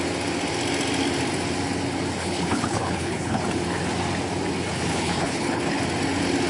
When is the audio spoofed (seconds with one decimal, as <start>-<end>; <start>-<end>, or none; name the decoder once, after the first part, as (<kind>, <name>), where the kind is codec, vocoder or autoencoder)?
2.2-3.4 (codec, HILCodec); 4.9-5.8